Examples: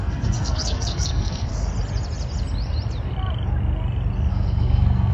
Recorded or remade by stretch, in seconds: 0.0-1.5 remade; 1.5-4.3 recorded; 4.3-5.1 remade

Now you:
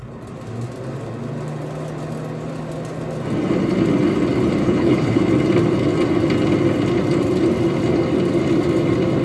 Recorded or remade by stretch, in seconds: 0.0-4.6 recorded; 4.6-5.2 remade; 5.2-9.2 recorded

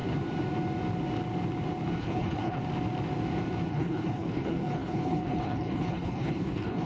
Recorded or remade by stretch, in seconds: 0.0-2.0 recorded; 2.0-2.6 remade; 2.6-3.7 recorded; 3.7-6.9 remade

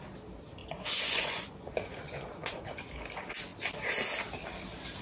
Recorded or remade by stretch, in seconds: 0.0-0.6 recorded; 0.6-2.9 remade; 2.9-5.0 recorded

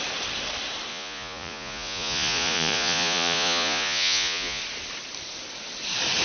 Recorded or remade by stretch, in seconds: 0.0-0.9 recorded; 0.9-4.6 remade; 4.6-6.2 recorded